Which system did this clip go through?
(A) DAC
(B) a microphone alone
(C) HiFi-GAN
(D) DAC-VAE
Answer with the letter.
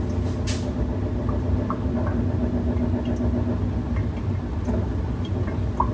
B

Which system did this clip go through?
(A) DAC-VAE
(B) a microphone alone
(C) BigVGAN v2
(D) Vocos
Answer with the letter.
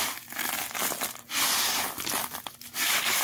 B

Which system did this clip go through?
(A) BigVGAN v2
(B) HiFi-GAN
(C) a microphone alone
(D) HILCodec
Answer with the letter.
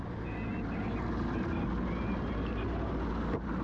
C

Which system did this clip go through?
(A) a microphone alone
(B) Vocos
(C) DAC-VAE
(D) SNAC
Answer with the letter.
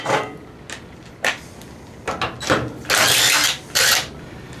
A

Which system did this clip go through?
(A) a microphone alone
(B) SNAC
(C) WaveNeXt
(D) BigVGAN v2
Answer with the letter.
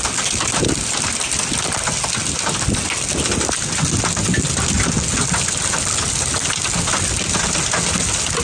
A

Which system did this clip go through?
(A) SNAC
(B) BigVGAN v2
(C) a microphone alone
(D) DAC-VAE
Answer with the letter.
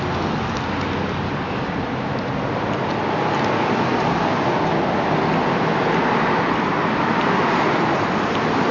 C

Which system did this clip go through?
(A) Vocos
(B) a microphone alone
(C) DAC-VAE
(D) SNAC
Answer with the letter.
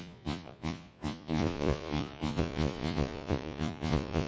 A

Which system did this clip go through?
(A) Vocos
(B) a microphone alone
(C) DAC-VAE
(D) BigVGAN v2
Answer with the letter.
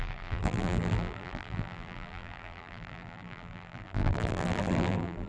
D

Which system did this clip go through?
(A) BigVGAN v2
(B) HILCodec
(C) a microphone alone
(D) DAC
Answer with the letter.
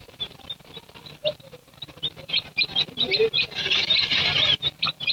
A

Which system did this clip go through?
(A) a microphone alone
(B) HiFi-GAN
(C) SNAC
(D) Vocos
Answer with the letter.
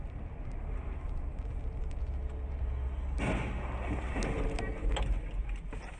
A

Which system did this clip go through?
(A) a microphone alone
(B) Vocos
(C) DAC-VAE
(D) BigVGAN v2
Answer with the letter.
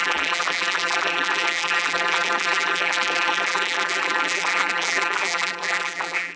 D